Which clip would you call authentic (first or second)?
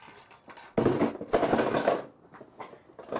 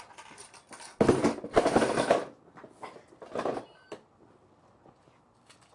first